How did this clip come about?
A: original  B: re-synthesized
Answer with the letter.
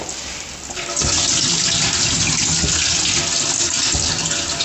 A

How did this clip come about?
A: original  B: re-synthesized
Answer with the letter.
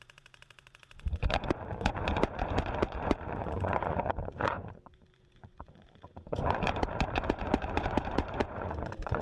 B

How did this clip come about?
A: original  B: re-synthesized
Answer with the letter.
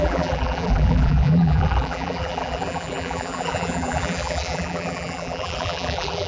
B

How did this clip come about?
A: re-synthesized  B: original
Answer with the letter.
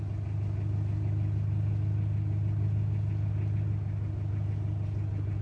B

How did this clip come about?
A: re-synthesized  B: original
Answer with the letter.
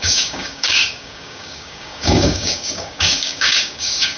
A